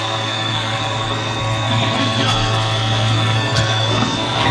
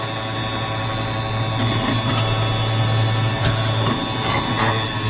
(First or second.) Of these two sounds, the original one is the second